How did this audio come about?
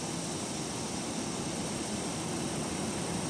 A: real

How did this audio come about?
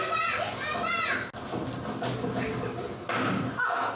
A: real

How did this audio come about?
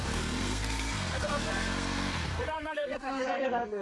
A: fake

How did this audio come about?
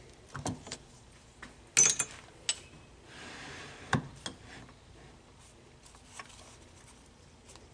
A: real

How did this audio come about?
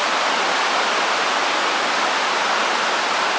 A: real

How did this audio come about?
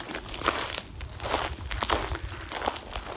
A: real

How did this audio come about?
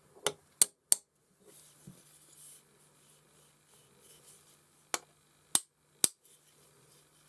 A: real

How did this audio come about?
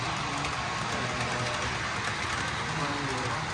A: real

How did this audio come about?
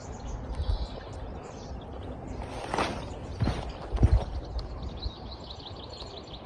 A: real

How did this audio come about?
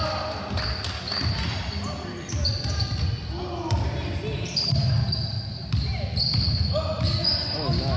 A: real